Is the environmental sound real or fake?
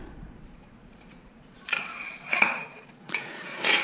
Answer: fake